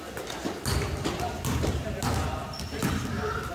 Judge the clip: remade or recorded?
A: recorded